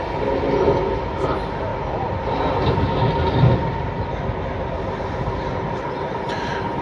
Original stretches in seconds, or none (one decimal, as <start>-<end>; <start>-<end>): 0.0-6.8